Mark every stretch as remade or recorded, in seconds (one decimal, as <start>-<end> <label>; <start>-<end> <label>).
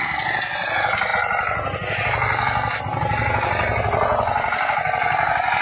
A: 0.0-5.6 recorded